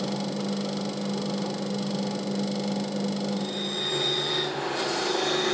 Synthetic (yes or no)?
no